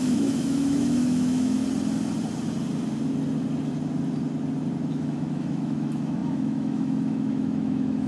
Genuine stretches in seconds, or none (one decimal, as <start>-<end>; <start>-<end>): 1.6-4.9

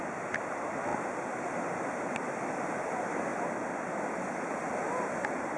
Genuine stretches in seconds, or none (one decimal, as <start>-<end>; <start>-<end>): 0.0-5.6